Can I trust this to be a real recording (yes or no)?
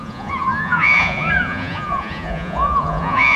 no